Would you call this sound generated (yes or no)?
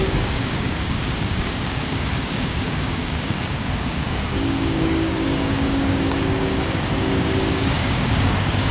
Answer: yes